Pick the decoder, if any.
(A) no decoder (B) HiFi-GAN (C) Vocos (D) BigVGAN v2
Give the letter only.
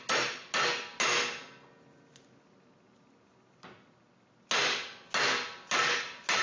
A